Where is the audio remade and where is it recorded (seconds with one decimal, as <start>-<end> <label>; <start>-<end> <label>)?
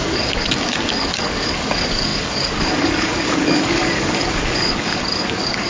0.0-5.7 remade